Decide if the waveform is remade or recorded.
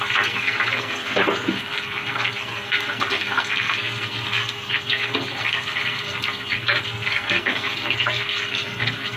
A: remade